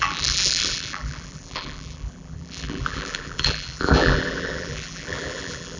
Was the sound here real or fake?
fake